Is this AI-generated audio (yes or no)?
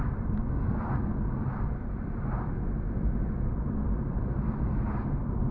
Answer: no